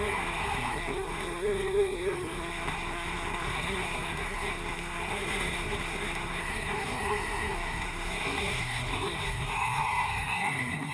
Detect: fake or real fake